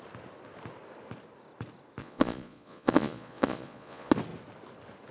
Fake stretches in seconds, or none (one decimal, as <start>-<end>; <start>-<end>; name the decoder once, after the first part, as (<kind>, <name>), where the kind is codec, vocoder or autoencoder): 2.0-4.1 (vocoder, Vocos)